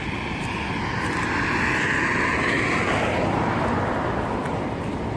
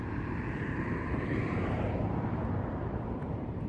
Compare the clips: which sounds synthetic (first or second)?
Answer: second